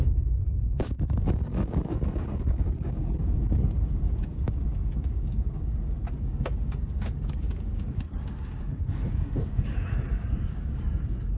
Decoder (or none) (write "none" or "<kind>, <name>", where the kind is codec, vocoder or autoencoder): codec, DAC